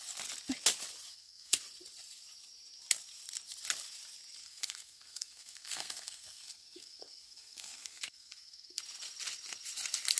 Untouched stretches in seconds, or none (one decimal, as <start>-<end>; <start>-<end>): 0.0-1.1; 1.6-4.4; 8.8-10.2